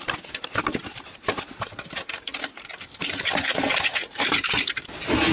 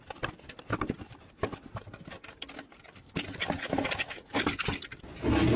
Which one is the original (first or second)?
second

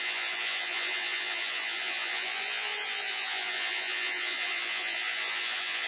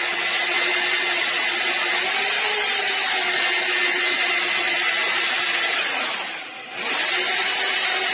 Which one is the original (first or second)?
second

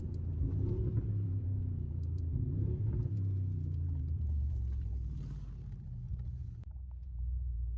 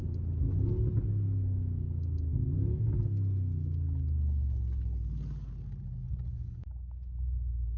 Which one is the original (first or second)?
second